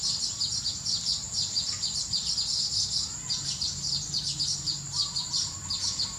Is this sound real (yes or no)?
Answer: yes